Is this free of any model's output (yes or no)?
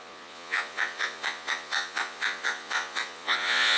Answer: no